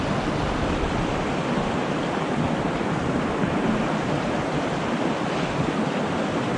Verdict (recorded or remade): recorded